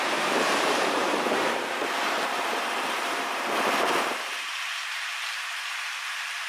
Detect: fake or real fake